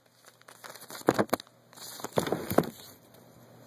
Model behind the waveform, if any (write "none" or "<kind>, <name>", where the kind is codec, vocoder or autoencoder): none